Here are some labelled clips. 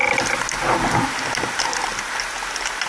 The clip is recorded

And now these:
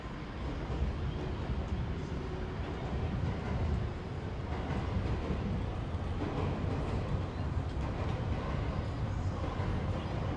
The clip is recorded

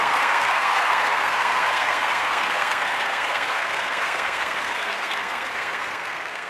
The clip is remade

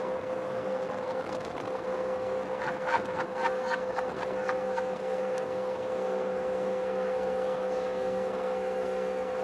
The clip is remade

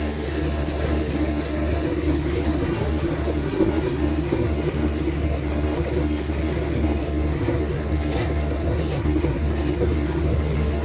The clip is remade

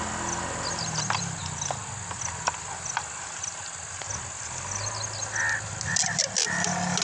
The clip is recorded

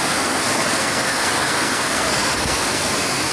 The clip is remade